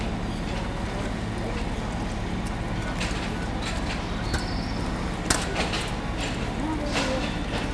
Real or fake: real